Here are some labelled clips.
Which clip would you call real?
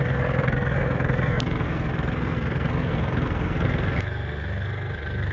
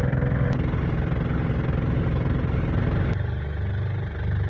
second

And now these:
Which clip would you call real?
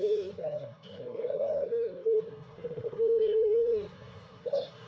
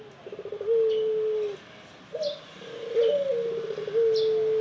second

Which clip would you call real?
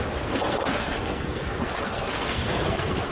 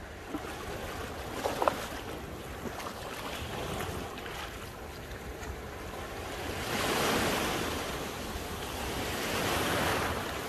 second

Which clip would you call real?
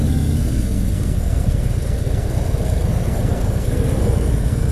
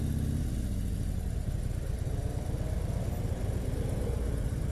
second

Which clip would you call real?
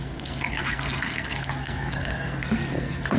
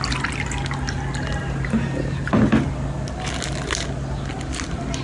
second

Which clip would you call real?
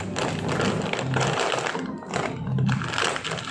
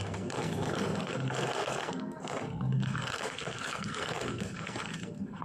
first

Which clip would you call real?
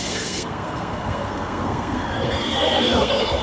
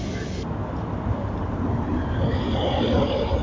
second